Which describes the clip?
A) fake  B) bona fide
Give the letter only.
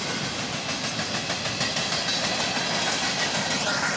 B